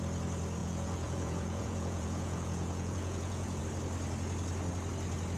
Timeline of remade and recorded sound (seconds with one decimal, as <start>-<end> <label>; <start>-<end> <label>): 0.0-0.6 recorded; 0.6-3.6 remade; 3.6-5.4 recorded